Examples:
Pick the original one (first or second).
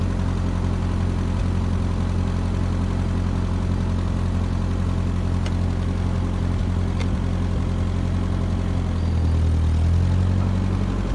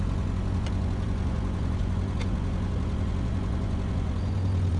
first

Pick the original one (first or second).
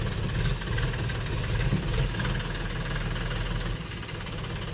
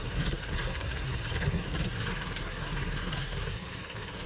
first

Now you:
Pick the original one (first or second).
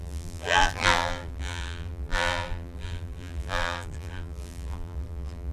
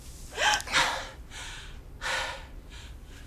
second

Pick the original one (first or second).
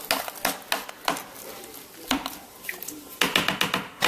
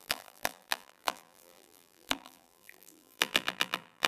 first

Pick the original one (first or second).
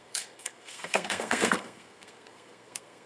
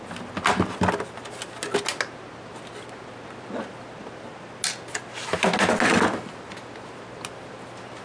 second